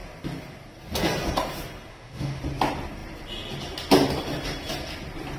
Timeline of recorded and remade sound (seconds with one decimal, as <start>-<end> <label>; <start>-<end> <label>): 0.0-1.9 recorded; 1.9-2.4 remade; 2.4-5.4 recorded